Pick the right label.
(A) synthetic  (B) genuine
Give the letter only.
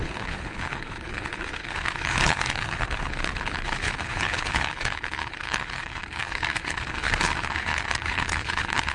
A